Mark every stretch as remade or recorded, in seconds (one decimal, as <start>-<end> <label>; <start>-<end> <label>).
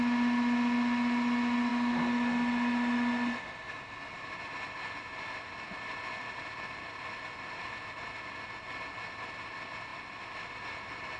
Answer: 0.0-11.2 recorded